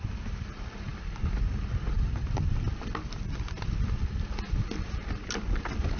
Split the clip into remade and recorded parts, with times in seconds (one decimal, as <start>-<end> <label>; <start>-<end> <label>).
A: 0.0-6.0 recorded